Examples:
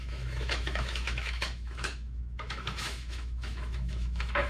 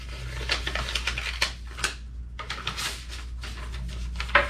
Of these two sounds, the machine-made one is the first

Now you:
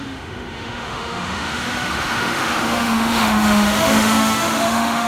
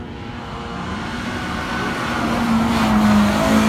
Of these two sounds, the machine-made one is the first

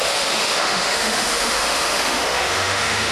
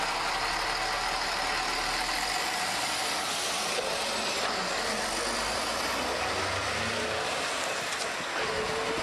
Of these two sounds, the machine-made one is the first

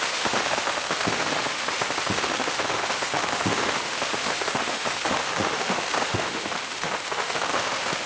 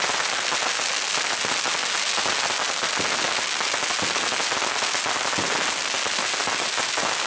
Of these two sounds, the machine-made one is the first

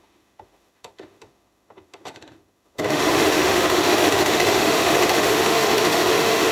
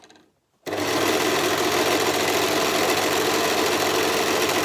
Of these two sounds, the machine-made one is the first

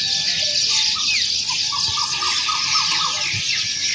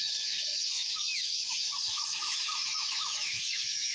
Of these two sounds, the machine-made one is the second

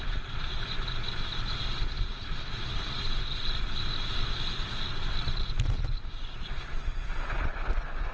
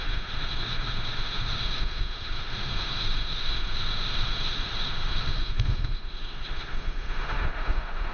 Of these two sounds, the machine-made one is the second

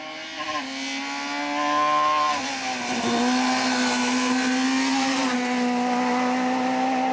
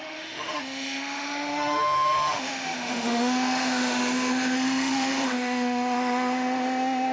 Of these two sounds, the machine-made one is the second